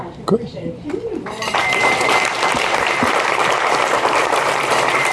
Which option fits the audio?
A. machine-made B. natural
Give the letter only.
A